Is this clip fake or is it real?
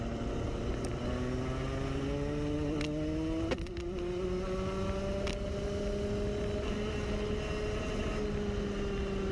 real